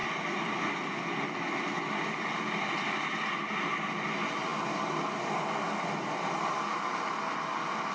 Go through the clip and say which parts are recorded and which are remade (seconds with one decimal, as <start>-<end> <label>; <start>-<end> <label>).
0.0-7.9 recorded